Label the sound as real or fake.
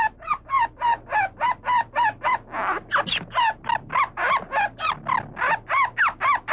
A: real